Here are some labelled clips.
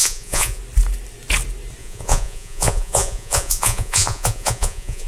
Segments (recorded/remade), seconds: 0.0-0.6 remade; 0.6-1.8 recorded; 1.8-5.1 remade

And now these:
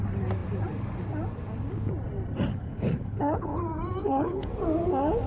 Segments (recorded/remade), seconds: 0.0-2.5 recorded; 2.5-3.6 remade; 3.6-4.0 recorded; 4.0-4.5 remade; 4.5-5.3 recorded

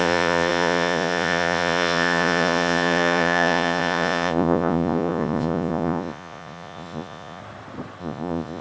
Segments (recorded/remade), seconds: 0.0-7.4 remade; 7.4-8.0 recorded; 8.0-8.6 remade

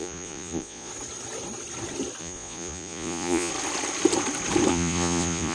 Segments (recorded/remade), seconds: 0.0-0.9 remade; 0.9-2.2 recorded; 2.2-3.5 remade; 3.5-4.7 recorded; 4.7-5.5 remade

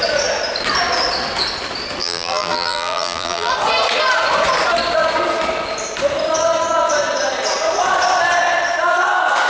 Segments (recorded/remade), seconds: 0.0-2.0 recorded; 2.0-3.5 remade; 3.5-9.5 recorded

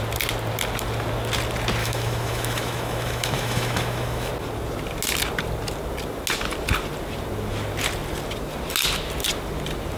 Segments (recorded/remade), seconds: 0.0-1.8 recorded; 1.8-4.3 remade; 4.3-10.0 recorded

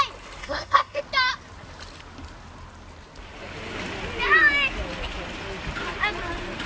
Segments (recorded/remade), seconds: 0.0-0.4 recorded; 0.4-1.0 remade; 1.0-6.7 recorded